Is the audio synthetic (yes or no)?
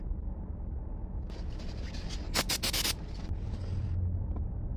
no